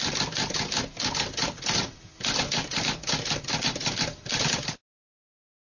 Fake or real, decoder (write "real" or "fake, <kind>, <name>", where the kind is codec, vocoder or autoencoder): real